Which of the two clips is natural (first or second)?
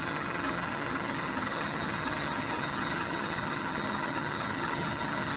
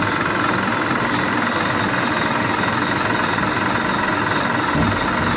second